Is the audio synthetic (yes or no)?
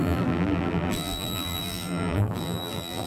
yes